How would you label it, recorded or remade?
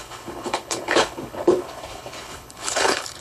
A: remade